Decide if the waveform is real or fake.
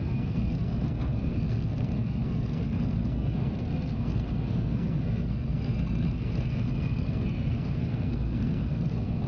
fake